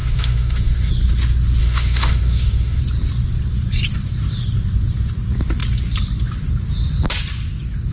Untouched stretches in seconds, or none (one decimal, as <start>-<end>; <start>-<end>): 0.9-1.6; 2.8-7.9